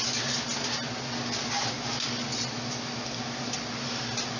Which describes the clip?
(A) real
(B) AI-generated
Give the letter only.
A